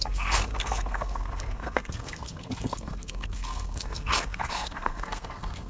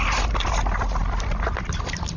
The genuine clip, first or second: second